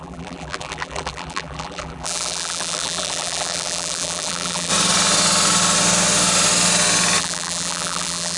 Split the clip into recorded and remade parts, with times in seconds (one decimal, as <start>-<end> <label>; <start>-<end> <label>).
0.0-4.7 remade; 4.7-7.2 recorded; 7.2-8.4 remade